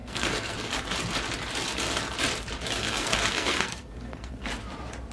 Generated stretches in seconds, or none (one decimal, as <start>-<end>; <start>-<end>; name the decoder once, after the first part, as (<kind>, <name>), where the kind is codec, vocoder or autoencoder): 0.0-0.7 (codec, SNAC); 2.8-4.5